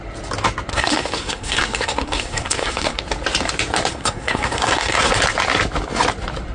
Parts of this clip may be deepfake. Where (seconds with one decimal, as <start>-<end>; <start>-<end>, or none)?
0.7-3.0; 3.9-5.1